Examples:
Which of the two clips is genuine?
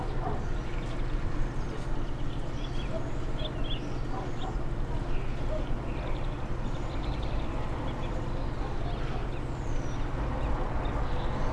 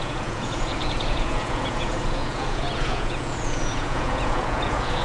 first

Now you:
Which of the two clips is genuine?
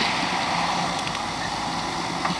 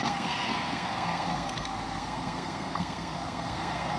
first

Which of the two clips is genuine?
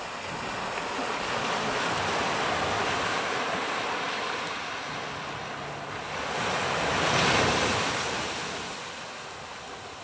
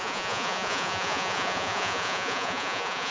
first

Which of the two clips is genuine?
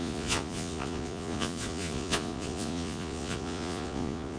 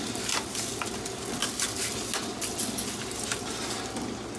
second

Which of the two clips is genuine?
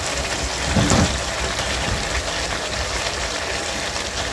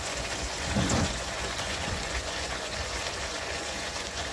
first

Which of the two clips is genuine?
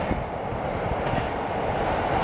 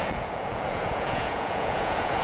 first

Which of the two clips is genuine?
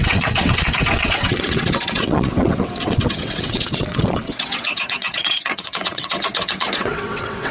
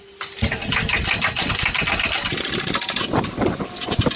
second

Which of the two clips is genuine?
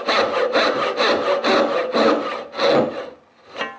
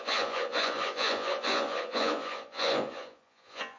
first